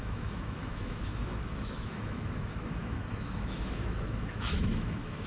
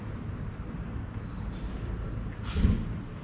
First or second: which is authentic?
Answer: second